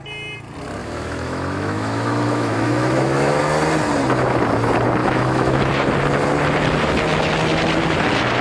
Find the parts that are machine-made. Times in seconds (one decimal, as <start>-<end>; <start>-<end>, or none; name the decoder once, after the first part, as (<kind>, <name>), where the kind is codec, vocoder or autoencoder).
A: 0.8-3.4 (autoencoder, DAC-VAE); 5.0-5.7